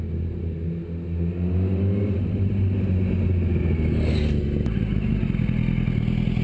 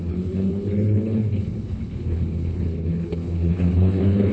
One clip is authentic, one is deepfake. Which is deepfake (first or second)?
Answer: second